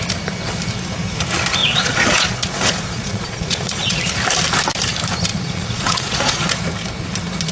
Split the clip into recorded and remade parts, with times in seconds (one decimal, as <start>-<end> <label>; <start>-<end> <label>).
0.0-1.6 recorded; 1.6-4.0 remade; 4.0-5.3 recorded; 5.3-6.4 remade; 6.4-7.5 recorded